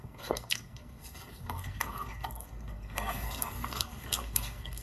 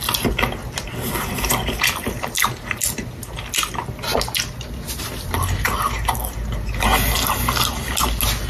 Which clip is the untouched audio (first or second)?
second